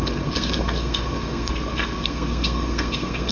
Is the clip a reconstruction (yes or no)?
yes